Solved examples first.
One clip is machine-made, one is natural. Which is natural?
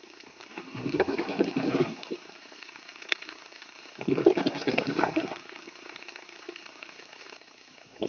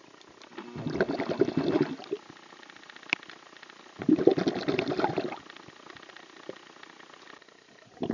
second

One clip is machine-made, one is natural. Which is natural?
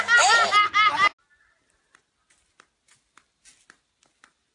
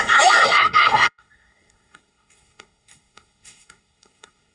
first